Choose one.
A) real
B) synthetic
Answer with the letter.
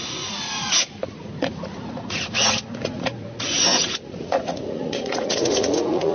B